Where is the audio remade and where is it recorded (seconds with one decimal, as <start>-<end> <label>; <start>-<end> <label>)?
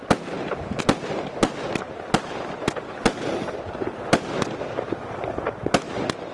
0.0-6.3 recorded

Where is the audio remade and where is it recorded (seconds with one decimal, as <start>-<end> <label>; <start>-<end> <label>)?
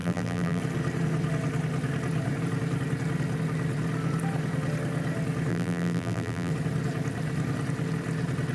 0.0-0.6 remade; 0.6-5.5 recorded; 5.5-6.5 remade; 6.5-8.5 recorded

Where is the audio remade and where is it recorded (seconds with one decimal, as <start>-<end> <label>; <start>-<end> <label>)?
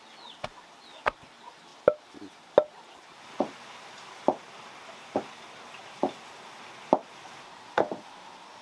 0.0-8.6 recorded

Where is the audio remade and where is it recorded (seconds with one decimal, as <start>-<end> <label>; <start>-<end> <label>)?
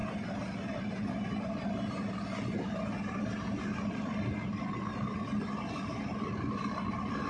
0.0-7.3 recorded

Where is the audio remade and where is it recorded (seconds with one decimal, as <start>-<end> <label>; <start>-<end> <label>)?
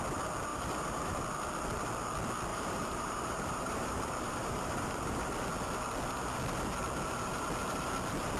0.0-0.5 recorded; 0.5-1.2 remade; 1.2-2.5 recorded; 2.5-5.5 remade; 5.5-8.4 recorded